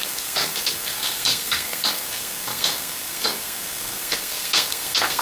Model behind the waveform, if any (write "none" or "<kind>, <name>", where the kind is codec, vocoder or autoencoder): codec, SNAC